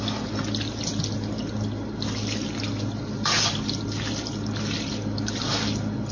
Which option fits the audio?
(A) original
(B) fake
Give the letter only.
A